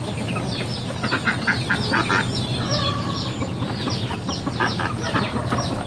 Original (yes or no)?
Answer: yes